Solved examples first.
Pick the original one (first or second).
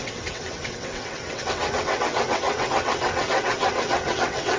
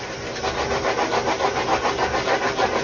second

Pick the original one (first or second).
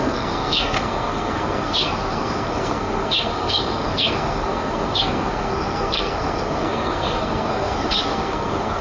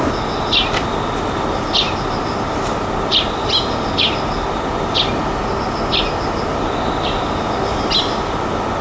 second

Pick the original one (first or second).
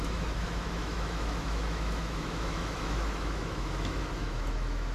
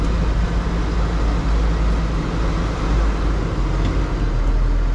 second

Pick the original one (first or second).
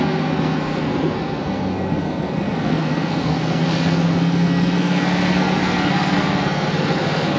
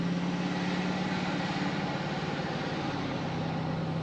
second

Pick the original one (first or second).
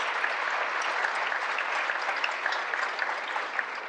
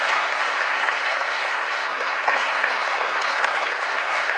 first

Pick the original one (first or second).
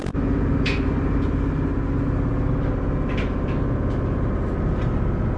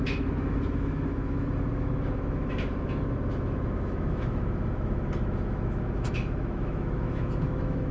first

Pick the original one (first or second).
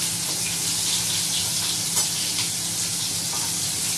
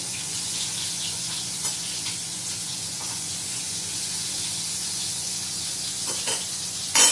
first